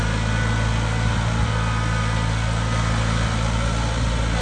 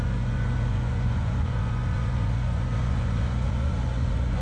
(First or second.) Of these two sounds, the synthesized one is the second